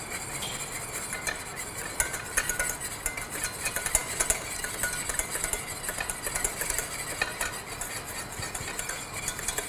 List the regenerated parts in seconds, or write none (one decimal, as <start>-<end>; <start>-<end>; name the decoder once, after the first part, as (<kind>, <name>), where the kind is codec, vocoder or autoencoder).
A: none